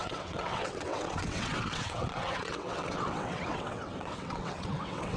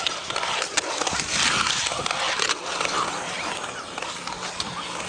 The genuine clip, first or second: second